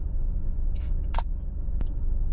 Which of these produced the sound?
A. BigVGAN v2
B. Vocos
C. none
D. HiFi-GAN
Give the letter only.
B